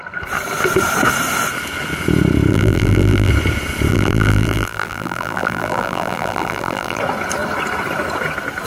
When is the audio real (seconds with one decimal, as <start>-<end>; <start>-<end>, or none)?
0.0-2.5; 3.3-3.9; 7.0-8.7